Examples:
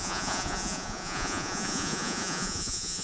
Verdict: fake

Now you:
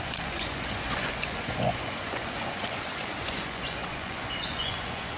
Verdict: fake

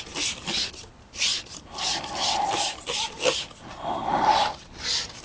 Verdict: real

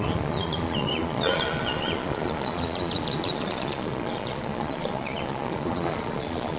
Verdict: fake